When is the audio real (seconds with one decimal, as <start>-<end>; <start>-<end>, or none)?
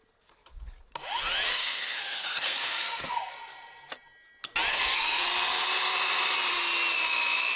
0.0-1.5; 3.3-4.7; 5.2-7.6